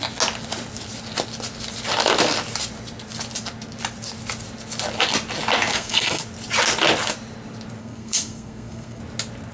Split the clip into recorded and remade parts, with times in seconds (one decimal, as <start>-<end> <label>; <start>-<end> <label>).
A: 0.0-5.7 recorded; 5.7-6.2 remade; 6.2-7.8 recorded; 7.8-9.0 remade; 9.0-9.5 recorded